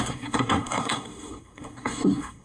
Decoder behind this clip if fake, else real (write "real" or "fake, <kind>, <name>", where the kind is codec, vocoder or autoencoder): fake, codec, SNAC